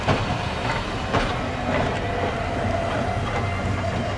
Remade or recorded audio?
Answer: recorded